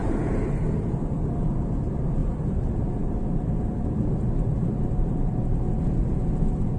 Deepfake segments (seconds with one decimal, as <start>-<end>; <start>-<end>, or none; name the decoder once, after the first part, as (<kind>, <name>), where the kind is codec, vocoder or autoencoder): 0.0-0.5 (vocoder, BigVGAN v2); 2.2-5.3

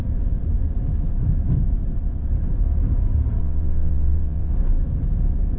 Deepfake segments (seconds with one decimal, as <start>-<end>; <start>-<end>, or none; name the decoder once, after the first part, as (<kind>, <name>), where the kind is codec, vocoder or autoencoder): 3.4-4.5 (vocoder, WaveNeXt)

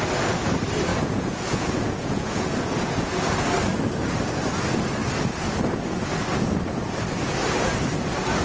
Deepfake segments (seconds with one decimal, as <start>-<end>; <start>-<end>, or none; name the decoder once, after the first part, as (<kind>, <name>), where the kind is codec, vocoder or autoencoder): 0.9-3.1 (vocoder, Vocos)

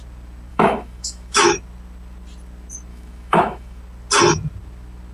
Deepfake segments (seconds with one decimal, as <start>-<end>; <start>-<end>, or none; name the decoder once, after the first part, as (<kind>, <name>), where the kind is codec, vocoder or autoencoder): 0.5-1.5 (autoencoder, DAC-VAE); 2.9-3.8